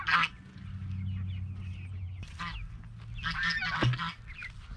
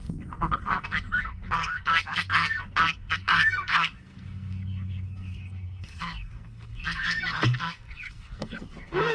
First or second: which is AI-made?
second